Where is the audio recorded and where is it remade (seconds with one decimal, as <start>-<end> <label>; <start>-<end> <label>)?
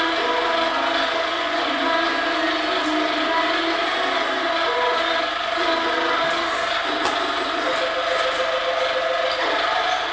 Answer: 0.0-1.3 recorded; 1.3-1.8 remade; 1.8-10.1 recorded